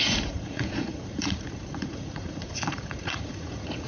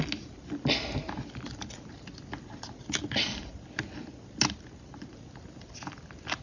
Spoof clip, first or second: first